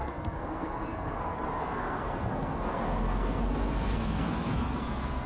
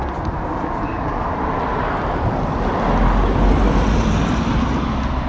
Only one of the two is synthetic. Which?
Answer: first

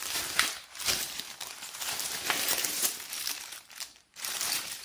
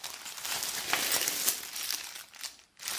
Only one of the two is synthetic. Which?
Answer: first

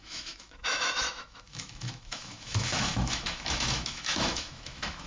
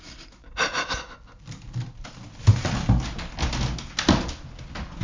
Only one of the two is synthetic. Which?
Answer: first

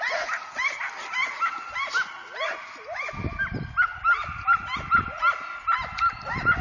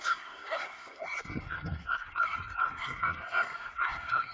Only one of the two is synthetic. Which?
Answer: second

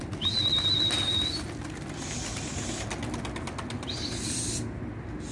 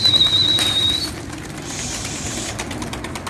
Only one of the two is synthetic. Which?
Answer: second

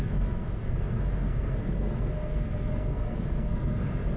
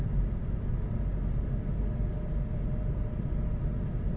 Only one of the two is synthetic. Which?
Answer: first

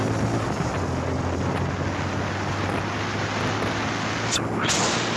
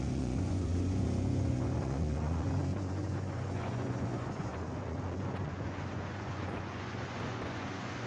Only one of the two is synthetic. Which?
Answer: second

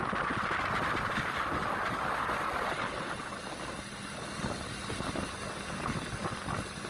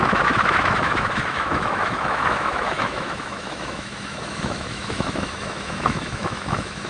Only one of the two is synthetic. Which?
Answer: second